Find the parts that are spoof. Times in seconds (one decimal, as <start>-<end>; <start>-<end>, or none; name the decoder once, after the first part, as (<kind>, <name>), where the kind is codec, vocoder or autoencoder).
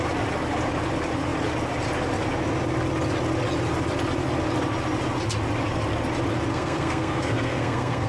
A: 6.5-8.1 (codec, SNAC)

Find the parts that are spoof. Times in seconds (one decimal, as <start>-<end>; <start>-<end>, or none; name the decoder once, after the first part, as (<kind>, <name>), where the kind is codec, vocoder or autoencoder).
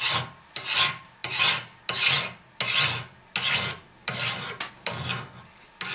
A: none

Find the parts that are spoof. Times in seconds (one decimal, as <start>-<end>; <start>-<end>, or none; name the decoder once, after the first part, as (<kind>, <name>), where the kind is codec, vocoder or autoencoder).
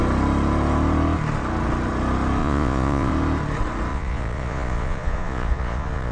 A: 2.4-3.1 (vocoder, Vocos); 3.9-6.1